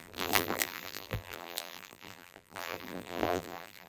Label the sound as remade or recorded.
remade